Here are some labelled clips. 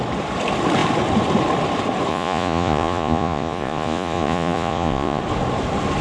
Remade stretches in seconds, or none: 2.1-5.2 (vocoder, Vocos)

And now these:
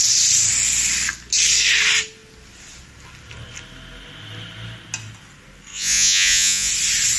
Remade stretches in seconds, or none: 5.7-6.7 (vocoder, Vocos)

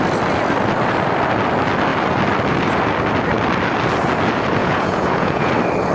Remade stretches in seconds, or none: 4.6-5.5 (vocoder, Vocos)

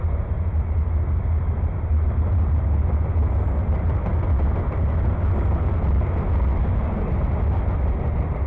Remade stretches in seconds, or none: none

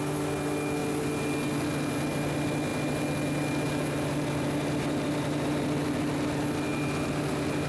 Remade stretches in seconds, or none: none

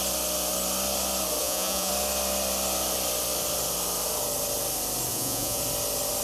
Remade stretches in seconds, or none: 1.4-1.9 (vocoder, Vocos); 5.1-5.6